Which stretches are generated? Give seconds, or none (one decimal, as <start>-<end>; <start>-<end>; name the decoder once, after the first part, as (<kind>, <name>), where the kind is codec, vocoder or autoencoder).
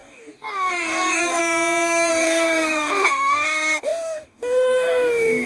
0.0-1.4 (codec, DAC); 2.1-5.5